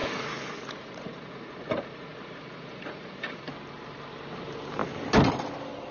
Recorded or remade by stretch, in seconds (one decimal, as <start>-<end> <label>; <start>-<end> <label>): 0.0-3.5 remade; 3.5-5.9 recorded